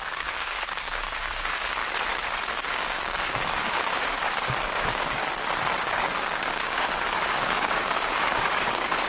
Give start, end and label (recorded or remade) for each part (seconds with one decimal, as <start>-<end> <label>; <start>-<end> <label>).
0.0-1.8 remade; 1.8-2.5 recorded; 2.5-5.2 remade; 5.2-5.8 recorded; 5.8-9.1 remade